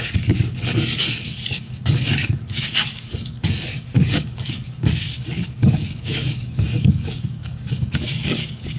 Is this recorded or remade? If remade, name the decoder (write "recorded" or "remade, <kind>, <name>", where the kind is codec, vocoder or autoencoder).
remade, codec, DAC